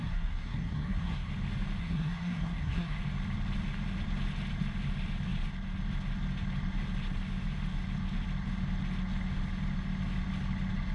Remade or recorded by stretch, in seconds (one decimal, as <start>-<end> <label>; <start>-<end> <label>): 0.0-1.3 remade; 1.3-1.8 recorded; 1.8-3.0 remade; 3.0-10.9 recorded